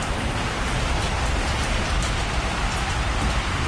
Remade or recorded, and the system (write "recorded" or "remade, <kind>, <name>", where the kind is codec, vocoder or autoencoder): remade, vocoder, BigVGAN v2